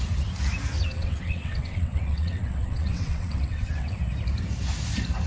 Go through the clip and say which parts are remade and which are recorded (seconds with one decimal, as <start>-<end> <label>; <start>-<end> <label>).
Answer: 0.0-0.8 recorded; 0.8-4.0 remade; 4.0-5.3 recorded